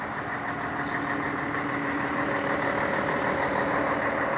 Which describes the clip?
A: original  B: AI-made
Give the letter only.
A